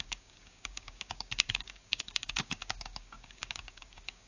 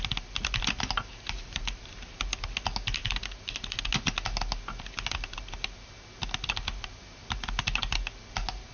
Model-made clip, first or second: first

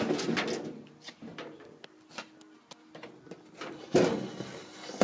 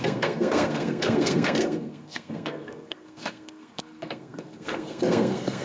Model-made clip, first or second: second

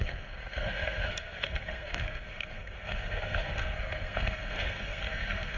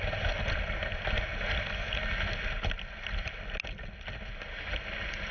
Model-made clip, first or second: first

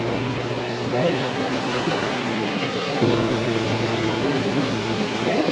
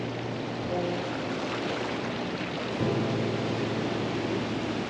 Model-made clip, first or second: first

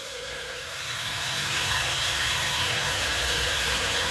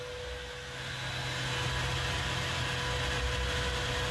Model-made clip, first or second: first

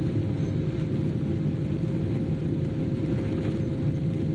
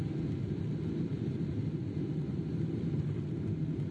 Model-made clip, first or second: second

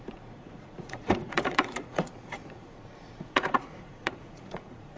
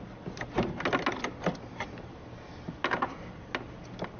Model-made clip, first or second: first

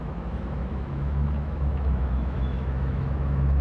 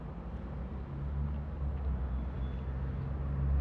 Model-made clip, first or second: first